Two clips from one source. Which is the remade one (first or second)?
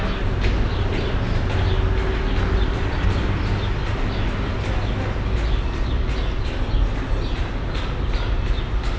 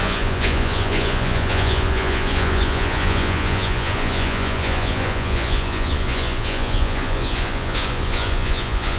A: second